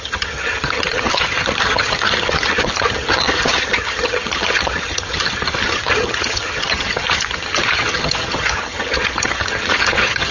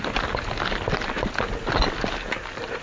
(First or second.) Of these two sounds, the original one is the second